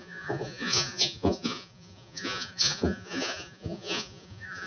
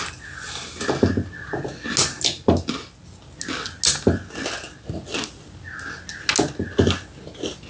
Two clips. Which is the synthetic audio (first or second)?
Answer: first